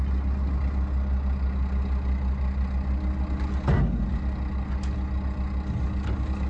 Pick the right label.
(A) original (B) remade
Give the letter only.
A